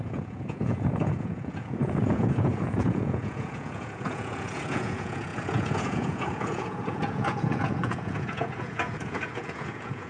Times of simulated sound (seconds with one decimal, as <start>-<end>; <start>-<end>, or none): 0.0-10.1